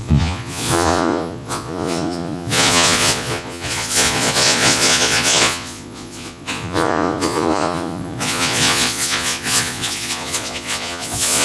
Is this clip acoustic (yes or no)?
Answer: no